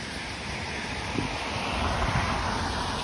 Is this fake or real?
fake